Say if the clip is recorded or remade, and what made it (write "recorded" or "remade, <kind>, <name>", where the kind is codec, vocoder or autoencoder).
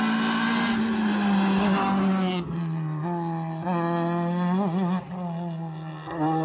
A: recorded